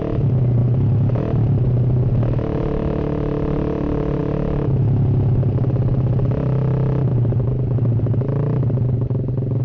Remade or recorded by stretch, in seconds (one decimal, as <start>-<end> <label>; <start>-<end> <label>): 0.0-9.6 recorded